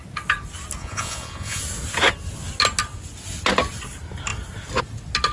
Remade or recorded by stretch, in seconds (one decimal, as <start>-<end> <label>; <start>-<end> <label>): 0.0-0.8 recorded; 0.8-1.6 remade; 1.6-5.3 recorded